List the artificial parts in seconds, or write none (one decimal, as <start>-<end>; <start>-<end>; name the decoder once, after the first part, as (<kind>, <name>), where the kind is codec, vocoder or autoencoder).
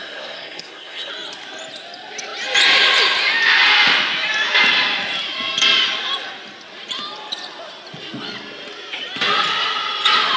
0.0-1.1 (codec, SNAC)